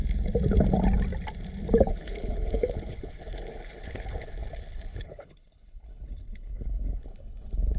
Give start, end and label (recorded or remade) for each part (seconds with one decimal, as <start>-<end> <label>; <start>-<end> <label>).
0.0-1.8 recorded; 1.8-7.8 remade

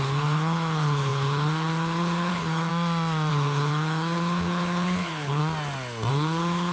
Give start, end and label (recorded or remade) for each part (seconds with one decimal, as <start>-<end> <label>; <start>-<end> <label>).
0.0-2.7 remade; 2.7-3.3 recorded; 3.3-5.4 remade; 5.4-6.1 recorded; 6.1-6.7 remade

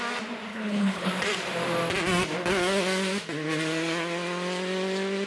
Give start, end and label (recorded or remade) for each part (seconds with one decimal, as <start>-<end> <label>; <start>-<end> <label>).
0.0-0.5 recorded; 0.5-1.1 remade; 1.1-5.3 recorded

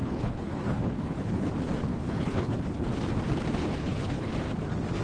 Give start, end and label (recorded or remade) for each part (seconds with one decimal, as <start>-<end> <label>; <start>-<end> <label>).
0.0-1.5 remade; 1.5-1.9 recorded; 1.9-2.9 remade; 2.9-3.6 recorded; 3.6-4.3 remade; 4.3-5.0 recorded

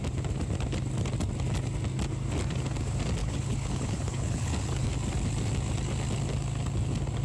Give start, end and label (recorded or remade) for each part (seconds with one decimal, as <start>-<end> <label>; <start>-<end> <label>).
0.0-3.2 recorded; 3.2-4.9 remade; 4.9-7.2 recorded

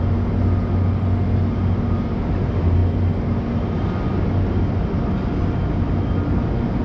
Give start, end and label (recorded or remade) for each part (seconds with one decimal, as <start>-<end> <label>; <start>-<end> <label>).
0.0-6.8 recorded

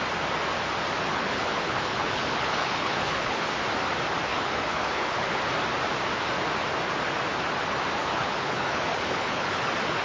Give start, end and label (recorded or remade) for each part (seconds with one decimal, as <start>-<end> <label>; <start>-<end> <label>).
0.0-1.1 recorded; 1.1-3.5 remade; 3.5-4.3 recorded; 4.3-5.4 remade; 5.4-8.0 recorded; 8.0-9.6 remade; 9.6-10.0 recorded

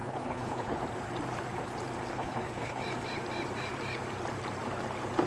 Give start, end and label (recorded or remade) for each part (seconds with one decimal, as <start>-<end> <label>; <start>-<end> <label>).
0.0-0.8 remade; 0.8-2.1 recorded; 2.1-2.8 remade; 2.8-5.3 recorded